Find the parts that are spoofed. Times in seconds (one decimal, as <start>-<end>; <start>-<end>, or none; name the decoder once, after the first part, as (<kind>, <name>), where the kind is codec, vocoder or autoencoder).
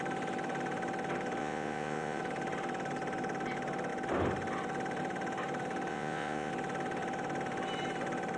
1.4-2.2 (vocoder, Vocos); 5.9-6.5